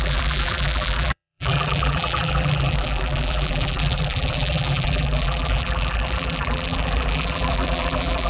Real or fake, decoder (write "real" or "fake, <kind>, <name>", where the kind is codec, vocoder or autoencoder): fake, vocoder, BigVGAN v2